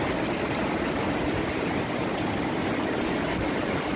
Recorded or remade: recorded